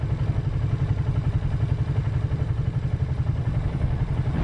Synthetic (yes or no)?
no